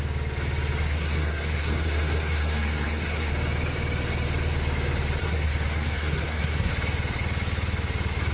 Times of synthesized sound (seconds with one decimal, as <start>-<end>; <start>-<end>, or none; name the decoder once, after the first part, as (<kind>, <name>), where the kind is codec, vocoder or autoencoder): 0.8-3.3 (codec, SNAC); 5.2-6.7